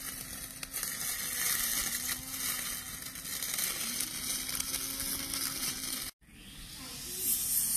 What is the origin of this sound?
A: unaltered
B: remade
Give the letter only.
A